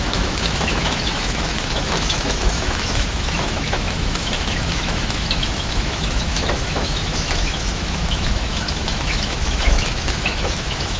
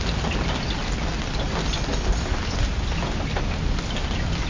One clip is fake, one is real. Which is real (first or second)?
second